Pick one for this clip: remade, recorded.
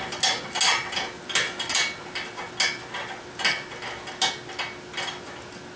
recorded